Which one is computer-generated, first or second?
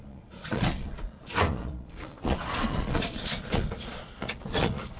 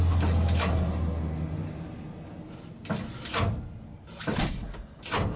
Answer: first